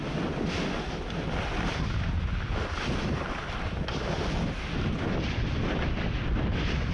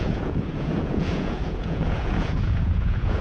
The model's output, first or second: second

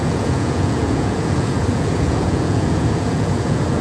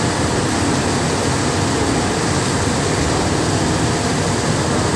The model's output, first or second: first